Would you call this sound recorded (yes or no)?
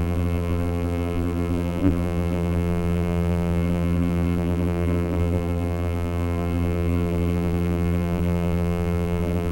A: no